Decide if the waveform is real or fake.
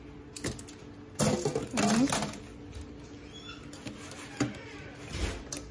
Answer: real